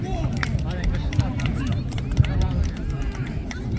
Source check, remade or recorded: recorded